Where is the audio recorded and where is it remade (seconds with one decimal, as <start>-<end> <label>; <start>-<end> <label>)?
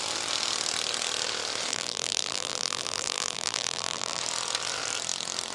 0.0-1.7 recorded; 1.7-4.2 remade; 4.2-5.5 recorded